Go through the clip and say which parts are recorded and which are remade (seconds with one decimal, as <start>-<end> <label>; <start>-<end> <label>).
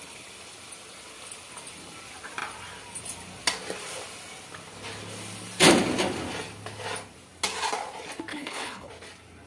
0.0-8.3 recorded; 8.3-8.9 remade; 8.9-9.5 recorded